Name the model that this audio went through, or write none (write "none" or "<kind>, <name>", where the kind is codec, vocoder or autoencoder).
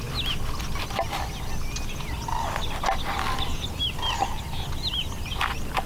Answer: none